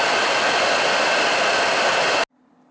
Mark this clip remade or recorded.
recorded